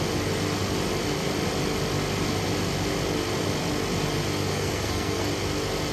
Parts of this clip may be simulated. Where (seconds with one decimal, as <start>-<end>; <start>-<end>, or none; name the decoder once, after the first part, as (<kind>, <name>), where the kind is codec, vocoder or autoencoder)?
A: 4.5-5.3 (codec, SNAC)

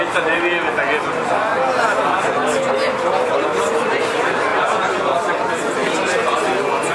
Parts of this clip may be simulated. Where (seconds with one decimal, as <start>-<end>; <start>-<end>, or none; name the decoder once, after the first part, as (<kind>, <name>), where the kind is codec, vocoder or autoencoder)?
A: none